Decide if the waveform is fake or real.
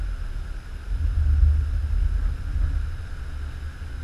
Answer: real